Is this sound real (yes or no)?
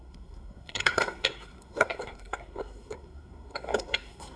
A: no